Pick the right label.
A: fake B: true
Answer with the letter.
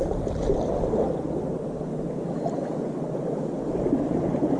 B